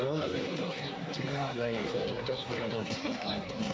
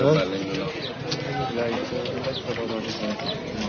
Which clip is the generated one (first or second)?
first